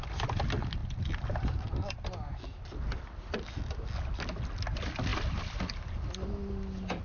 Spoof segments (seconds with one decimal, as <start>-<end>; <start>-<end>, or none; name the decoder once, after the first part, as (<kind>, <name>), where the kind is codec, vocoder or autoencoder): none